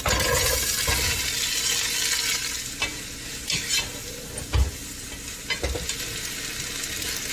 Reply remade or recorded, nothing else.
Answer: recorded